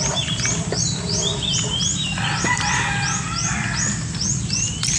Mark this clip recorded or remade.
recorded